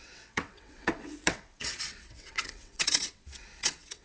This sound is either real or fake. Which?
fake